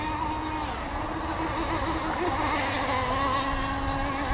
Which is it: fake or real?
real